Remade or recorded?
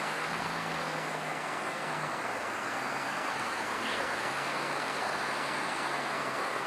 remade